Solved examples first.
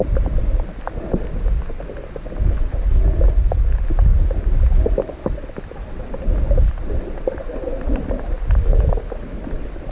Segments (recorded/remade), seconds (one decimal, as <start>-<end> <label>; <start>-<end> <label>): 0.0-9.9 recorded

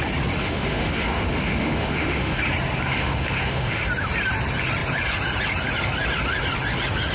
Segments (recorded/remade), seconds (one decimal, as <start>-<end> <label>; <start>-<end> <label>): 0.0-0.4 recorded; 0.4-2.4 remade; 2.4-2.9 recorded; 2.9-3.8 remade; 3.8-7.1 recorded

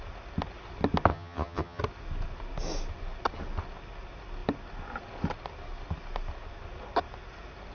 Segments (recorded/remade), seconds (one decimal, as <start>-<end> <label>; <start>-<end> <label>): 0.0-1.1 recorded; 1.1-1.8 remade; 1.8-7.7 recorded

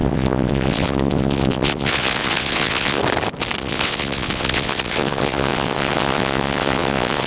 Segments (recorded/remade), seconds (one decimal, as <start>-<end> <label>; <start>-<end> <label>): 0.0-3.0 remade; 3.0-3.6 recorded; 3.6-7.3 remade

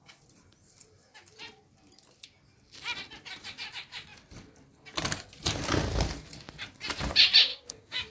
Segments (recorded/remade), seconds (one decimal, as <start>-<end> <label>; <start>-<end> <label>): 0.0-7.5 recorded; 7.5-8.1 remade